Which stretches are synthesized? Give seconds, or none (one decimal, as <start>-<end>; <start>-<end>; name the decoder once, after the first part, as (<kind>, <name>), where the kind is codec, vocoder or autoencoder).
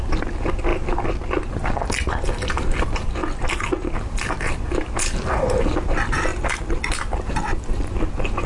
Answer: none